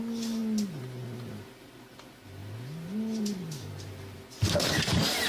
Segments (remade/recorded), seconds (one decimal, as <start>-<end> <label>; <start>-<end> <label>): 0.0-5.3 recorded